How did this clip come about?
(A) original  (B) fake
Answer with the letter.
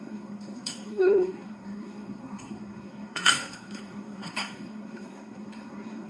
B